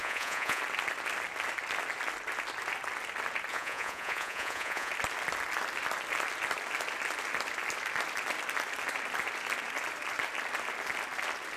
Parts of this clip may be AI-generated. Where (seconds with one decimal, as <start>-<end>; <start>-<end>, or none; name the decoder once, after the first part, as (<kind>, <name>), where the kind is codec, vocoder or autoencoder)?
0.0-0.6 (vocoder, Vocos); 3.5-4.9